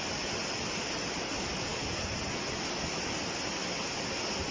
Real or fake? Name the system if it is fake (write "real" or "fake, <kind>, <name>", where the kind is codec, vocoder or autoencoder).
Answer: real